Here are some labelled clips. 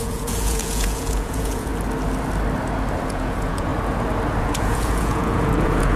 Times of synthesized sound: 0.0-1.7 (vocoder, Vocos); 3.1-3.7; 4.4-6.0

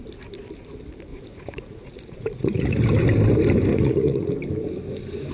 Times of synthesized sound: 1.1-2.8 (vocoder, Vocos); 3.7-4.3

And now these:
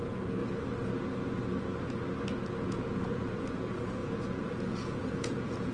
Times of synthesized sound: 0.0-0.4 (vocoder, Vocos); 2.6-5.7

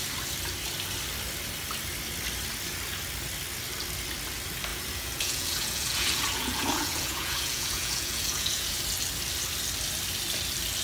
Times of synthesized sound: 4.7-8.8 (vocoder, Vocos)

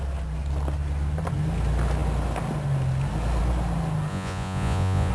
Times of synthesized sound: 4.1-5.1 (vocoder, Vocos)

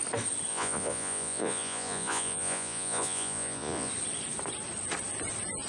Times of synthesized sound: 0.5-3.9 (vocoder, Vocos)

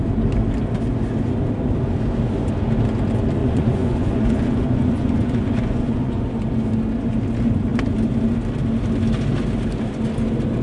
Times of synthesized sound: 3.4-6.3 (vocoder, Vocos)